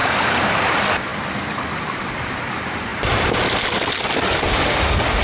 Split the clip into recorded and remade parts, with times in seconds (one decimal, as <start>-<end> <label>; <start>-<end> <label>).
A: 0.0-0.5 remade; 0.5-5.2 recorded